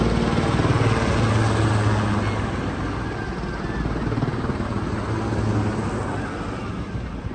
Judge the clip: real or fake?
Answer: real